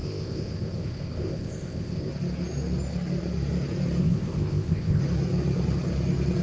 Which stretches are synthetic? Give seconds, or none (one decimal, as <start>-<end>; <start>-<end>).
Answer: 0.0-2.1; 4.0-5.0